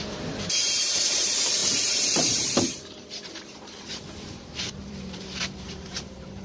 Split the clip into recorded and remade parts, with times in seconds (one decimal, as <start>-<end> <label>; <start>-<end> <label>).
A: 0.0-6.4 remade

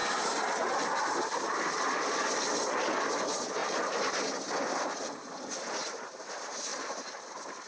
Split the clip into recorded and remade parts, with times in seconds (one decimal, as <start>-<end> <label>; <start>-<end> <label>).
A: 0.0-0.6 remade; 0.6-3.6 recorded; 3.6-4.2 remade; 4.2-6.7 recorded; 6.7-7.2 remade; 7.2-7.7 recorded

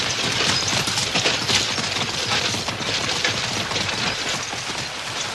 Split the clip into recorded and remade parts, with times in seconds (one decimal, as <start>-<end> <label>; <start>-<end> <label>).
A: 0.0-1.0 remade; 1.0-4.2 recorded; 4.2-5.3 remade

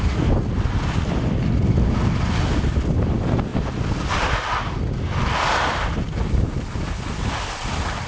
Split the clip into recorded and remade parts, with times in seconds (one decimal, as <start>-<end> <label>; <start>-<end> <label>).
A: 0.0-8.1 recorded